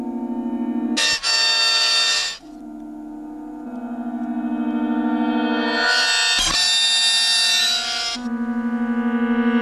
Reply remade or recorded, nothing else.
recorded